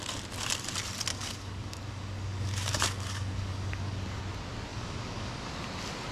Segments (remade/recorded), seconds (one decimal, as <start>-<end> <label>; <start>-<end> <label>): 0.0-1.1 recorded; 1.1-4.2 remade; 4.2-4.7 recorded; 4.7-5.5 remade; 5.5-6.1 recorded